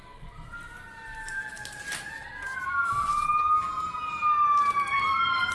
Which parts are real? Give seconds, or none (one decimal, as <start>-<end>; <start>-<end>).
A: 0.0-5.5